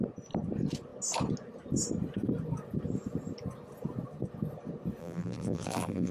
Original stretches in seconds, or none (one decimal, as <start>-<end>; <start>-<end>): 0.0-5.0